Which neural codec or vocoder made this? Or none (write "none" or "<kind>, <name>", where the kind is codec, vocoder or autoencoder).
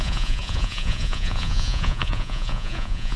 vocoder, Vocos